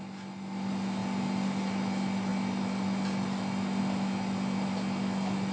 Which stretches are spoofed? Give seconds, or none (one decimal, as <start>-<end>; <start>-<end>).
none